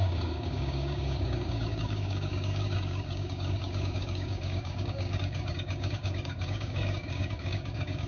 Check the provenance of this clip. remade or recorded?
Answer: remade